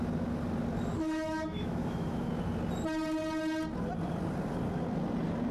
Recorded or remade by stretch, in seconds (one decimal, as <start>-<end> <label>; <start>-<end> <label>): 0.0-0.9 recorded; 0.9-2.3 remade; 2.3-5.5 recorded